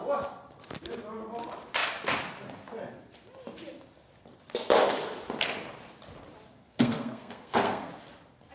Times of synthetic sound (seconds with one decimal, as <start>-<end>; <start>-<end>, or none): 6.6-7.9